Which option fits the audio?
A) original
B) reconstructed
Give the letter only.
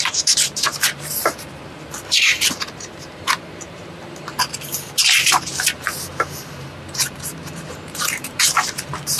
B